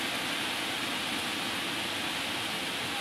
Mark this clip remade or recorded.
recorded